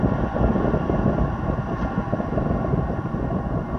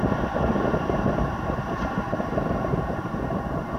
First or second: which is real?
first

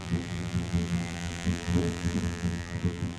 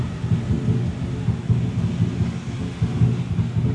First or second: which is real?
second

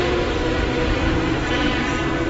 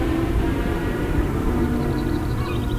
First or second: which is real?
first